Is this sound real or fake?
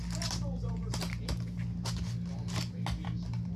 real